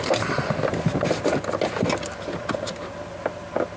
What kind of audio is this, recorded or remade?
recorded